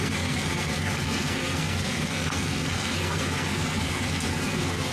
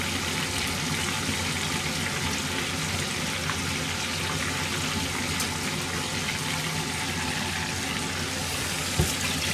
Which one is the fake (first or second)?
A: first